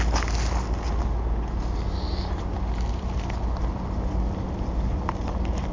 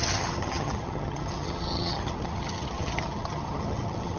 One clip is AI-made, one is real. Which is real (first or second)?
first